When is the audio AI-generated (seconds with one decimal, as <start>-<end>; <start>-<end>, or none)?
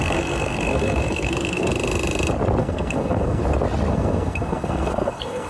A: 0.0-1.7; 2.6-3.4; 3.9-5.5